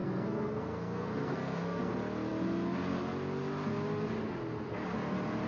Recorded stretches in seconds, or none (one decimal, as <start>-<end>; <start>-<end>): 1.9-5.5